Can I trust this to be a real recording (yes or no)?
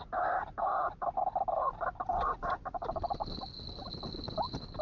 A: yes